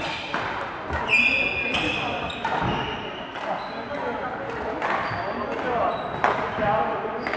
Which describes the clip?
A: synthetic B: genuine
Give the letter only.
B